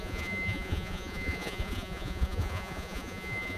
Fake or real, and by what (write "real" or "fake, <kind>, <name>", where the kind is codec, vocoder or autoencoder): fake, vocoder, Vocos